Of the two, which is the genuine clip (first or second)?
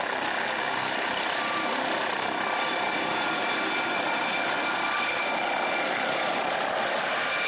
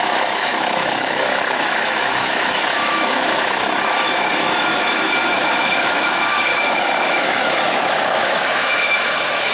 first